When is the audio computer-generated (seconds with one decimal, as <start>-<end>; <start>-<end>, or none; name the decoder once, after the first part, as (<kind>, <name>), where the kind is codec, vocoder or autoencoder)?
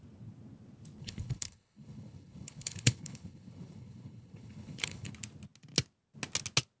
1.0-5.1 (codec, HILCodec)